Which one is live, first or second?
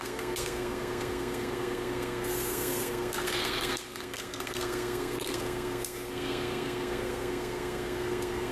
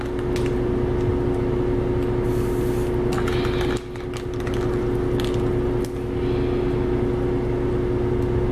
second